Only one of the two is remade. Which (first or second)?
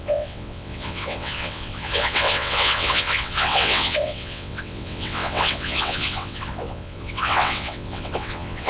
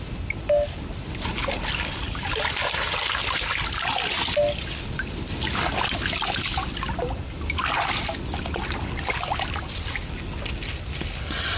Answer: first